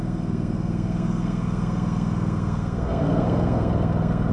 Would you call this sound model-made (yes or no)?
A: yes